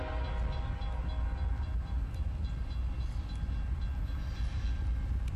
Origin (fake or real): real